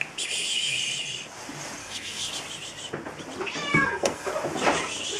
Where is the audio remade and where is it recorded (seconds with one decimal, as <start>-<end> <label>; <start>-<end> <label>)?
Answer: 0.0-1.8 recorded; 1.8-2.3 remade; 2.3-3.7 recorded; 3.7-4.3 remade; 4.3-5.2 recorded